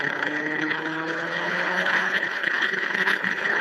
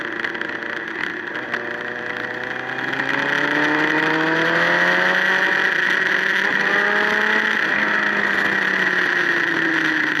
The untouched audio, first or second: second